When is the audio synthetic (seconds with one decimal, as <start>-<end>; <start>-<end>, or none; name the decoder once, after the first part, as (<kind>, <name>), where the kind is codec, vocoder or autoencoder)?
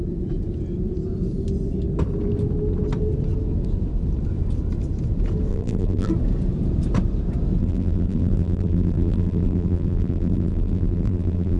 5.5-6.1 (vocoder, BigVGAN v2); 7.6-11.6